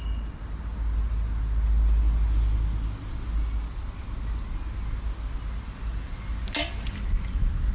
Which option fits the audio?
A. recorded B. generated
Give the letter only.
A